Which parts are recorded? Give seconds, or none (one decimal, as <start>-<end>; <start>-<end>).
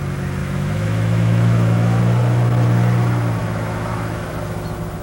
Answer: 0.0-0.4; 2.0-3.4; 4.3-5.0